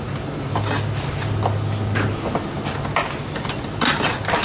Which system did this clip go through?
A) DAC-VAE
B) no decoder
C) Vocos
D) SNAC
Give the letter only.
B